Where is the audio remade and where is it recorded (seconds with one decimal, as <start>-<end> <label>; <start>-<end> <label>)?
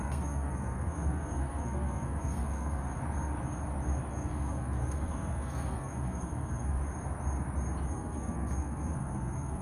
0.0-2.9 remade; 2.9-4.1 recorded; 4.1-6.8 remade; 6.8-7.9 recorded; 7.9-9.6 remade